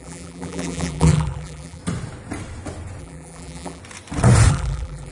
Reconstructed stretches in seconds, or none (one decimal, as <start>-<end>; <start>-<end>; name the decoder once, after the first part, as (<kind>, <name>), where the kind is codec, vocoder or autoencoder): 0.0-1.8 (vocoder, BigVGAN v2); 3.0-3.8; 4.5-5.1